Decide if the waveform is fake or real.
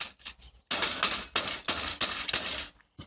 real